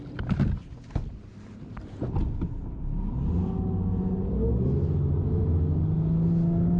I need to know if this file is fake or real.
real